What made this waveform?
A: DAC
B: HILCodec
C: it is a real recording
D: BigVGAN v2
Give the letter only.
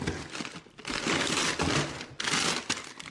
C